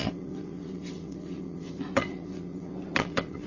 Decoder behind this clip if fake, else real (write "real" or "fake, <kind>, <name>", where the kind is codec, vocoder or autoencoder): fake, vocoder, WaveNeXt